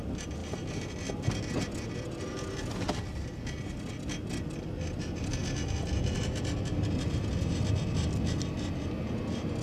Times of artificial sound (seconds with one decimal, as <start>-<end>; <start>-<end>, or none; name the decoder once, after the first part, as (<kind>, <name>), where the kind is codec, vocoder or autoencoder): none

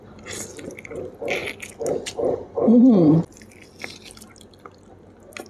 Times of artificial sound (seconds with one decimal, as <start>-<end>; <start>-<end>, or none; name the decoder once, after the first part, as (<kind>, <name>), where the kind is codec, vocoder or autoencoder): none

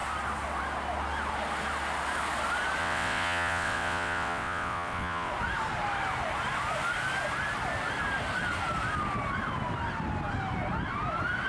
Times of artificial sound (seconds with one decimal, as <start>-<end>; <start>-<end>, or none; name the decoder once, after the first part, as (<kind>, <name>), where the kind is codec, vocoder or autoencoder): 2.8-5.3 (vocoder, WaveNeXt)

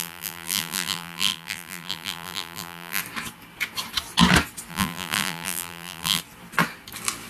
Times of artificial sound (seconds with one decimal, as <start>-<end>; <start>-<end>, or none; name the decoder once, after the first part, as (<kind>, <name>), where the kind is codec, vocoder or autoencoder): 0.0-3.0 (vocoder, BigVGAN v2); 4.7-6.2

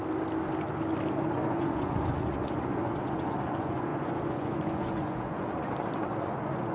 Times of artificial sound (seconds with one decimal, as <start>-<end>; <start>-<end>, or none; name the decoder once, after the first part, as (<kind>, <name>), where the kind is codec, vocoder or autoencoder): 1.2-6.7 (vocoder, Vocos)